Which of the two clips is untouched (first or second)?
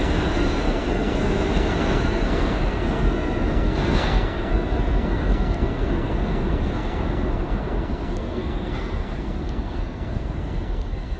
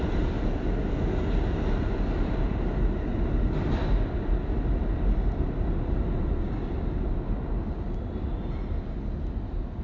second